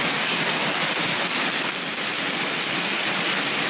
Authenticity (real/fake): real